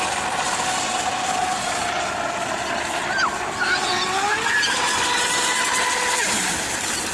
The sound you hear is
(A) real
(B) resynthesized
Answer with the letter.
A